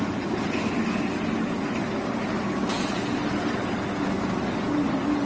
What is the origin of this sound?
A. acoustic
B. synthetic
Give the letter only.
A